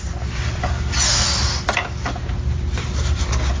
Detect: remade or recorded recorded